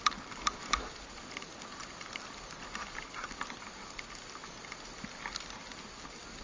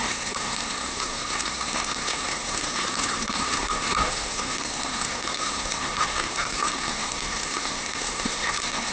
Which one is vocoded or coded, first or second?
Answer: second